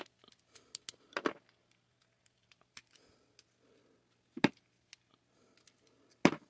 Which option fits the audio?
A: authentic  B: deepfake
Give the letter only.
A